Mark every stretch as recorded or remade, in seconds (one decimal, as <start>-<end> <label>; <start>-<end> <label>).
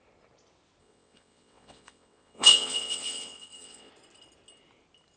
0.0-0.8 recorded; 0.8-3.9 remade; 3.9-5.2 recorded